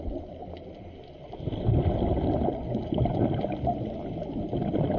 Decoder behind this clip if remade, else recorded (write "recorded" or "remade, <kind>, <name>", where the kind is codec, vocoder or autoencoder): recorded